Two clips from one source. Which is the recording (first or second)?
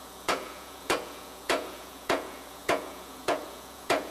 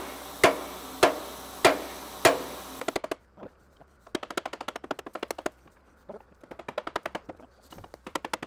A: second